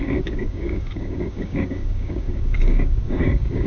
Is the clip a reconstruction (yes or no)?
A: yes